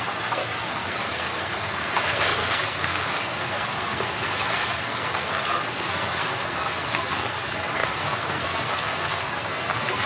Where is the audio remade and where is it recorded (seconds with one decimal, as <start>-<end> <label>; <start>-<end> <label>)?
0.0-10.1 remade